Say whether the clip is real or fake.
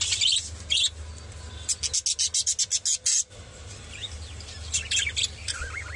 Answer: real